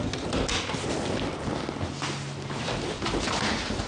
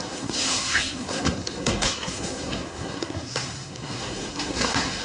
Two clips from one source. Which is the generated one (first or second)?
second